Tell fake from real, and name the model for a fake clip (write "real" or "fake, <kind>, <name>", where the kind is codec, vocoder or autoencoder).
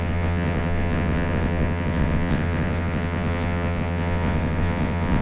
fake, vocoder, WaveNeXt